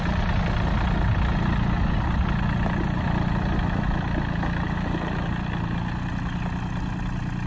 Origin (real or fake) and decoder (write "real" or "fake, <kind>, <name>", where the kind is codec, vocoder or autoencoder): real